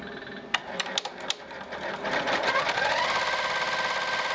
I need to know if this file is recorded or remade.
recorded